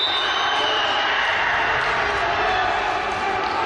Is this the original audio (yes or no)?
yes